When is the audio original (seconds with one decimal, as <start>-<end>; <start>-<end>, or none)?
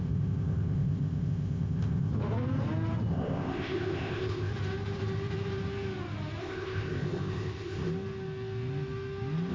2.1-3.1; 4.5-6.4; 7.9-9.5